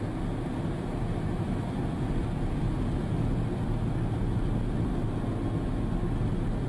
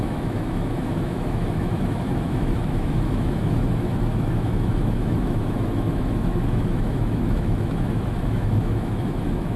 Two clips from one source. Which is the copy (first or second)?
second